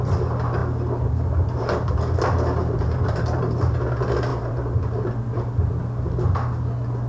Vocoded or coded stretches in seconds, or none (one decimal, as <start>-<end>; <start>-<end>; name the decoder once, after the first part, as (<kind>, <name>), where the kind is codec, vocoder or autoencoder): 2.6-3.4 (vocoder, BigVGAN v2); 4.3-5.0